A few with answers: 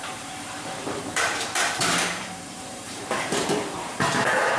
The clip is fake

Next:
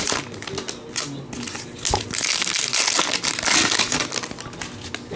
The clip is real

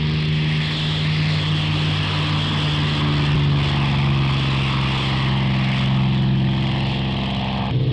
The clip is real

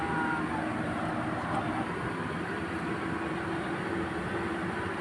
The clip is real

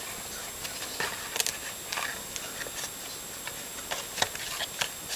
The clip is real